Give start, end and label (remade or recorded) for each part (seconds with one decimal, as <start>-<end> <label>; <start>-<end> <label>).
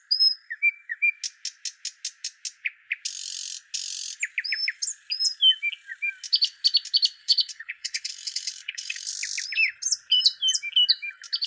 0.0-7.2 recorded; 7.2-9.1 remade; 9.1-11.5 recorded